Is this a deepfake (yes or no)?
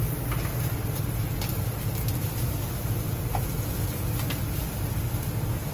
no